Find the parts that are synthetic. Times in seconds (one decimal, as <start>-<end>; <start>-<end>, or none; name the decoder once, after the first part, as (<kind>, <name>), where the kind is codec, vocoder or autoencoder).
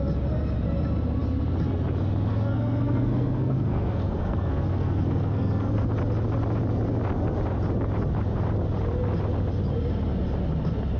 2.3-5.9 (codec, SNAC)